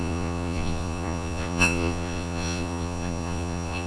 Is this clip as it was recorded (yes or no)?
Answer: no